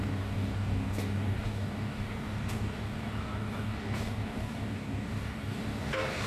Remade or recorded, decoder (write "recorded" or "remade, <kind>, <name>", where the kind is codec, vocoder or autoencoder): remade, codec, DAC